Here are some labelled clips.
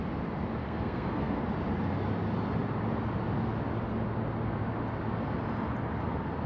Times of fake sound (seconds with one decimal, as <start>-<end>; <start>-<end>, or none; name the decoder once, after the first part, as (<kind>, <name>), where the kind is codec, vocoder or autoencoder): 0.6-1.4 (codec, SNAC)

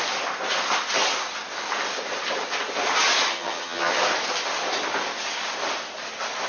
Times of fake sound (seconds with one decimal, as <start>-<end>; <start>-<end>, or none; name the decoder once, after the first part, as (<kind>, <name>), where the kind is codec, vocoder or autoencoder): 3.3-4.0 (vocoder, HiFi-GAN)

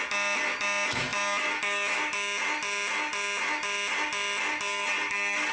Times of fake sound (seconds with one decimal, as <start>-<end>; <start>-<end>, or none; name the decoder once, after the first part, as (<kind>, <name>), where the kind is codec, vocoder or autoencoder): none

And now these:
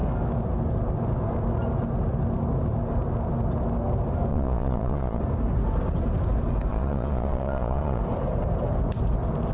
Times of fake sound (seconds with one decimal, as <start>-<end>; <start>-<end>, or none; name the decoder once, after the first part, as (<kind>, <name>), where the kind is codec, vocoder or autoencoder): 4.3-5.2 (vocoder, Vocos); 6.7-8.0

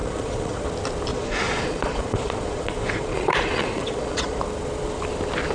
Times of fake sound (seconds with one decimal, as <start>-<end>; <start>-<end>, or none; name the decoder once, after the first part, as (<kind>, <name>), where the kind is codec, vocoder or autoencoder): 0.0-0.6 (vocoder, Vocos); 1.1-4.4

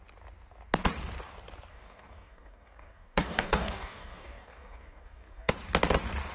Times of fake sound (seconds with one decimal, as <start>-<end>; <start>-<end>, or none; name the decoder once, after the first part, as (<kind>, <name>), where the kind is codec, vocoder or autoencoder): 1.7-5.5 (codec, DAC)